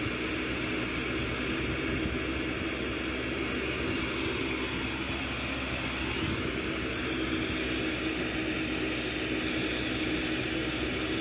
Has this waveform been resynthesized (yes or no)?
no